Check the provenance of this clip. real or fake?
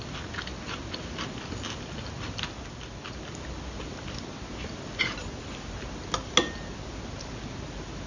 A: real